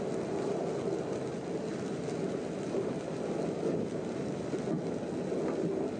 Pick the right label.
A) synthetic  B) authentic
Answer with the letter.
B